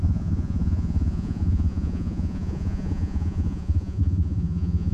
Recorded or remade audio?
remade